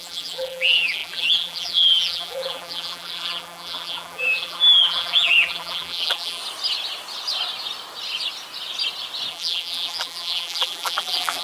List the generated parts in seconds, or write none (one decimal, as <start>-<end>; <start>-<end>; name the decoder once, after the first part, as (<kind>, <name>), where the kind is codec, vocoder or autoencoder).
0.0-6.4 (vocoder, BigVGAN v2); 9.3-11.4